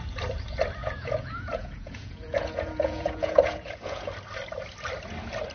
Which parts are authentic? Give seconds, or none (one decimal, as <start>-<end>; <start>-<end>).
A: 0.0-0.8; 4.1-5.5